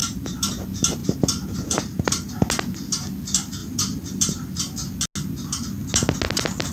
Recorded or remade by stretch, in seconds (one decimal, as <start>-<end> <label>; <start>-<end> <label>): 0.0-0.5 remade; 0.5-1.0 recorded; 1.0-2.3 remade; 2.3-3.6 recorded; 3.6-4.6 remade; 4.6-6.7 recorded

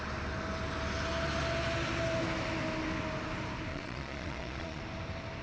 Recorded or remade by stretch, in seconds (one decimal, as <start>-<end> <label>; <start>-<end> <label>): 0.0-3.7 recorded; 3.7-4.8 remade; 4.8-5.4 recorded

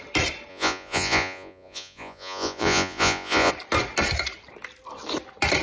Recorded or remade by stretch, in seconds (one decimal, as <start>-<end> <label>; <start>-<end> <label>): 0.0-0.5 recorded; 0.5-3.5 remade; 3.5-5.6 recorded

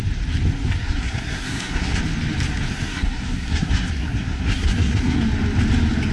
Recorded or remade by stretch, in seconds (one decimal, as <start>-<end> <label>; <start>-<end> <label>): 0.0-0.8 recorded; 0.8-2.0 remade; 2.0-2.7 recorded; 2.7-5.2 remade; 5.2-6.1 recorded

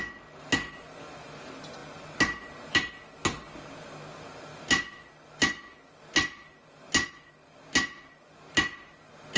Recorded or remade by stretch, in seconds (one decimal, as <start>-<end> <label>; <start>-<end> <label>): 0.0-9.4 recorded

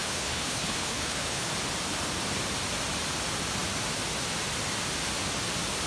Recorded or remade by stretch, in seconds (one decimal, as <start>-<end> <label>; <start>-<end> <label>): 0.0-1.5 remade; 1.5-5.9 recorded